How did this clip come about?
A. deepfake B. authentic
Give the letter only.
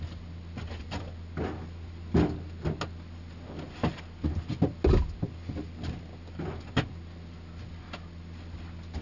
B